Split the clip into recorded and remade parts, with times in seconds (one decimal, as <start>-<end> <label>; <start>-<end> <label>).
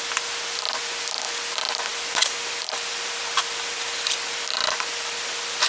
0.0-1.9 recorded; 1.9-5.3 remade; 5.3-5.7 recorded